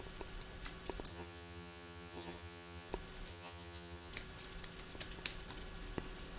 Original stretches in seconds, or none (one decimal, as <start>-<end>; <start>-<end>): 0.0-1.1; 2.9-3.3; 4.1-6.4